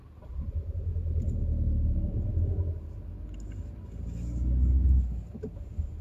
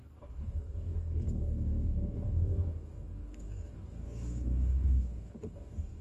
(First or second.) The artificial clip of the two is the second